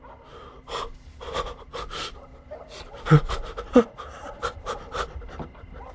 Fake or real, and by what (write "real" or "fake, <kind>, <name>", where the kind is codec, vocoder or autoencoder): real